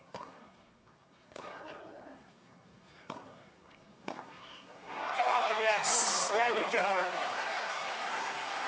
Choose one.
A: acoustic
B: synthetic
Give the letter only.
B